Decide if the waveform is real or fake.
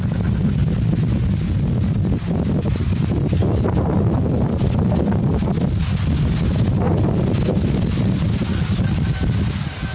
real